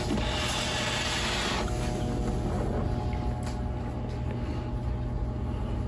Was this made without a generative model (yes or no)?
yes